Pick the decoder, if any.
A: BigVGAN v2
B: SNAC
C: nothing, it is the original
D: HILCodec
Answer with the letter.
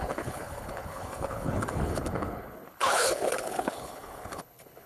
D